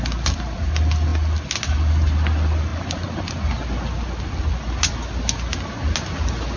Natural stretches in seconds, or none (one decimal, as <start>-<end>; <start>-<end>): 0.0-6.6